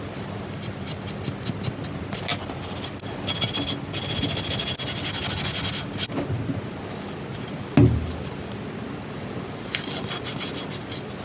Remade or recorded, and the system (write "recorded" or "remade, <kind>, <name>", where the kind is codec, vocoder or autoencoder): recorded